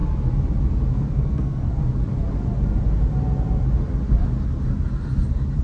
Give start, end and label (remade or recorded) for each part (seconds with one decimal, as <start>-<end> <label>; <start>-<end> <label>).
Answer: 0.0-0.9 recorded; 0.9-1.8 remade; 1.8-5.6 recorded